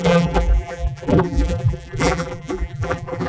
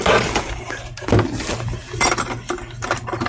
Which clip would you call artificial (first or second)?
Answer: first